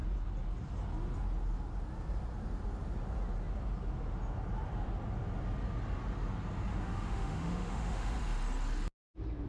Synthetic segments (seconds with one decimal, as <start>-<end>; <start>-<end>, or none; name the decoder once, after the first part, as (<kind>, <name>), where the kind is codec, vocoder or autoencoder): 6.7-8.1 (autoencoder, DAC-VAE)